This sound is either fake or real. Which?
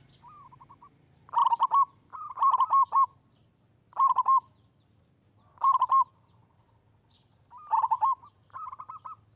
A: real